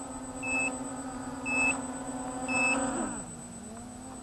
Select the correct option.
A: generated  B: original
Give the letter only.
B